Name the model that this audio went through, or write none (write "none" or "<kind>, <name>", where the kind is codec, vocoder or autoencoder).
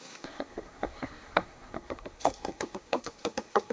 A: codec, SNAC